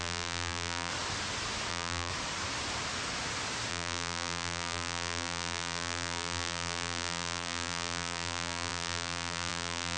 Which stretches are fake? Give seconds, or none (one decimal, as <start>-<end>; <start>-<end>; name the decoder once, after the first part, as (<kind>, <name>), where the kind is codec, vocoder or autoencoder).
0.0-0.9 (vocoder, BigVGAN v2); 1.7-2.1; 3.7-10.0